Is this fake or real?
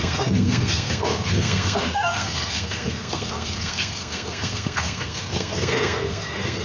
fake